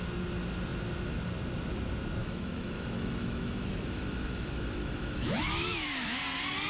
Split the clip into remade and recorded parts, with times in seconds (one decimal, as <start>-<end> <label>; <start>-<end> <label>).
0.0-2.2 recorded; 2.2-6.2 remade; 6.2-6.7 recorded